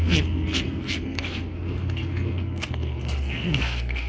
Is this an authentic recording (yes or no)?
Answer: no